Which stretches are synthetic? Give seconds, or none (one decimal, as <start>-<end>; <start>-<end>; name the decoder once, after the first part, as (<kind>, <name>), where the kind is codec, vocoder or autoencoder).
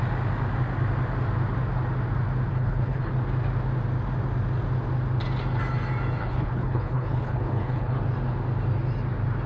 2.5-3.1 (codec, HILCodec); 6.2-8.0